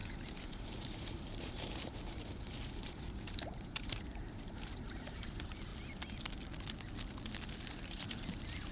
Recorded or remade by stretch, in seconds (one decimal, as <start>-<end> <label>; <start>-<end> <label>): 0.0-5.7 remade; 5.7-7.7 recorded; 7.7-8.7 remade